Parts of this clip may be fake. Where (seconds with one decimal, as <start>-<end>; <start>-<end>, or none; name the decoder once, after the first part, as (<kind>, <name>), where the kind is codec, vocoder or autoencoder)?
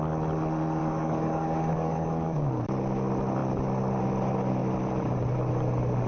0.8-2.5 (codec, DAC)